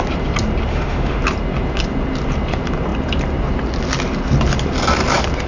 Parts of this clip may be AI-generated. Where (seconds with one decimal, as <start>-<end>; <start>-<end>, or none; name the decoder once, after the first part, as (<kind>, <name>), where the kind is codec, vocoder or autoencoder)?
0.7-1.2 (autoencoder, DAC-VAE)

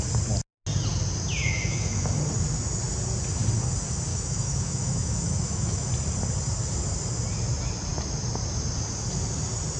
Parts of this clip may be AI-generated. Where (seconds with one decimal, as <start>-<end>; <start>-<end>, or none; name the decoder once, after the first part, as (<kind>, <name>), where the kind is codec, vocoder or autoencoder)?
1.4-2.2 (autoencoder, DAC-VAE); 4.1-5.9